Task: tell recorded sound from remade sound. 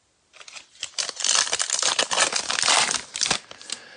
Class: recorded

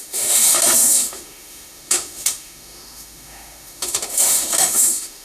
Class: remade